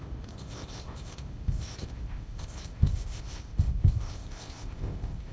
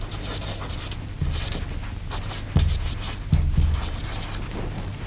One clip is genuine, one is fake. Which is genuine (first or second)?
second